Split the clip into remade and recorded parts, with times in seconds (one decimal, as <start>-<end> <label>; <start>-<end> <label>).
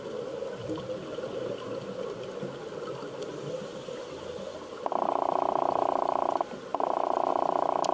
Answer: 0.0-6.7 recorded; 6.7-7.3 remade; 7.3-7.9 recorded